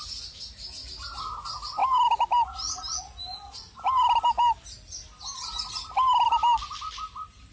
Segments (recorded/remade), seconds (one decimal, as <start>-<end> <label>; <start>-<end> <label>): 0.0-7.5 recorded